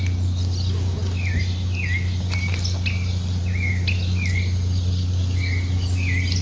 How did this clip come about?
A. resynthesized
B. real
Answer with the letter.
B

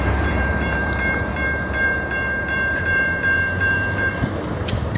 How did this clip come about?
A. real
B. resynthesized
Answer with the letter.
B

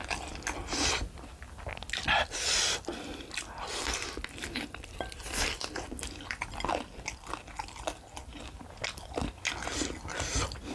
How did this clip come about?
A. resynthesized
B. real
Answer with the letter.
B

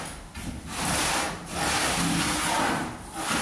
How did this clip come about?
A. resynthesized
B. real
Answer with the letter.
B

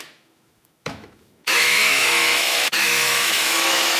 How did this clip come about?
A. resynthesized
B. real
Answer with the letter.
A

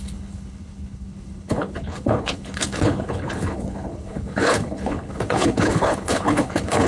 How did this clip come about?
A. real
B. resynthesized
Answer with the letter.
B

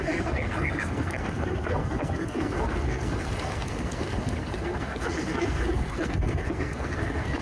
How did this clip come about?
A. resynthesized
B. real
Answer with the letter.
A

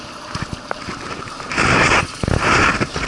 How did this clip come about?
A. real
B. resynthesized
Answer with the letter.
B